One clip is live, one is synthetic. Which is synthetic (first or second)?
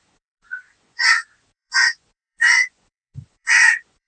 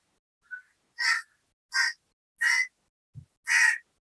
first